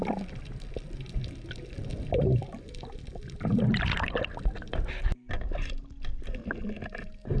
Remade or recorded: recorded